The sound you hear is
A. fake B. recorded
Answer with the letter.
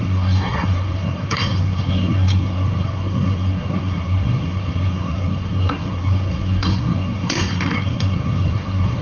A